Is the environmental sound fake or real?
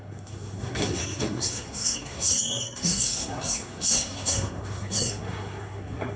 fake